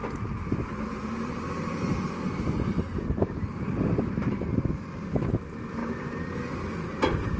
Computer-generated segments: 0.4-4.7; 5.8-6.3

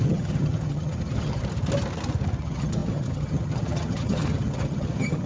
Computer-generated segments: 0.0-1.4; 2.4-5.3

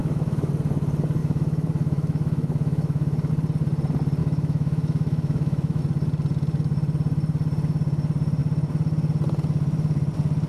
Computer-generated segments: 0.0-0.5; 1.2-3.3; 4.2-5.8

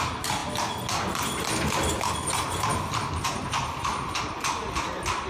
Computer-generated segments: 2.7-3.5

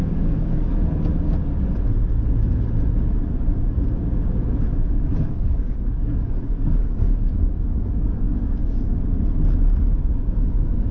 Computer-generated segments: 0.0-0.7; 4.7-8.6; 10.1-10.9